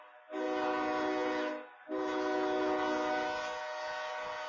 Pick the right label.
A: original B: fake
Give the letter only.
A